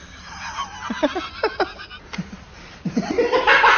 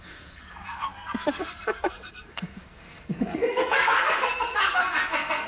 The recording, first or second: first